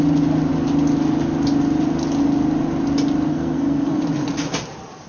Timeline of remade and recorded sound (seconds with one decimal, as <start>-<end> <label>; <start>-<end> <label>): 0.0-3.3 recorded; 3.3-4.0 remade; 4.0-5.1 recorded

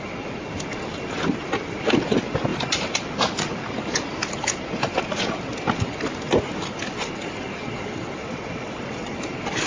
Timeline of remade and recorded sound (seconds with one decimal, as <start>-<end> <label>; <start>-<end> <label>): 0.0-8.2 recorded; 8.2-9.2 remade; 9.2-9.7 recorded

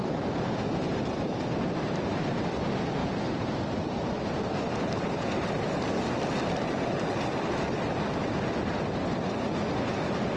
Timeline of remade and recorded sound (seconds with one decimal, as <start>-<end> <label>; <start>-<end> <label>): 0.0-2.0 remade; 2.0-3.0 recorded; 3.0-5.8 remade; 5.8-10.4 recorded

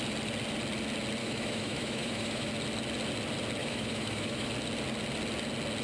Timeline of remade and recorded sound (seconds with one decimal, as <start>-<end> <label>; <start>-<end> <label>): 0.0-1.2 recorded; 1.2-2.5 remade; 2.5-3.6 recorded; 3.6-4.5 remade; 4.5-5.8 recorded

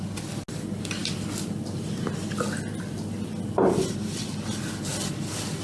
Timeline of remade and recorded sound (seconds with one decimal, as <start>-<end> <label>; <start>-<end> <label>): 0.0-5.6 recorded

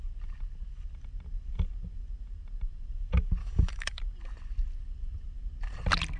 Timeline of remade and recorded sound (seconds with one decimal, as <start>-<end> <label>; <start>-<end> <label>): 0.0-3.4 recorded; 3.4-4.0 remade; 4.0-6.2 recorded